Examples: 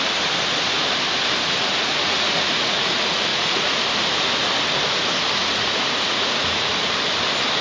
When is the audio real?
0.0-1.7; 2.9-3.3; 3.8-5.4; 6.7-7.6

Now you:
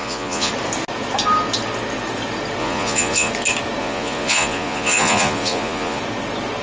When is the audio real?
0.5-2.6; 3.3-3.8; 6.0-6.6

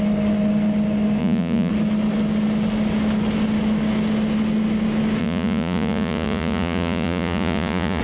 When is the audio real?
0.0-1.2; 1.7-5.2